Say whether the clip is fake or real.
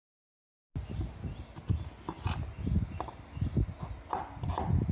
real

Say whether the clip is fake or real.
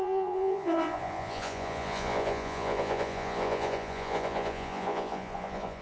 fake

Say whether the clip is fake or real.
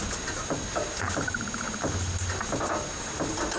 real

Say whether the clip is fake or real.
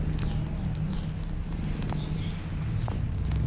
real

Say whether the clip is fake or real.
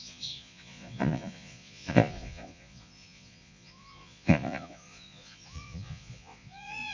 fake